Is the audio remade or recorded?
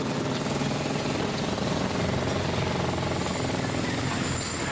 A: recorded